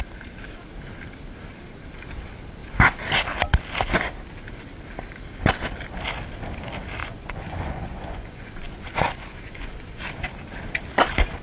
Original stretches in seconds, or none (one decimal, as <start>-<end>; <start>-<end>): 0.0-7.0; 10.0-11.4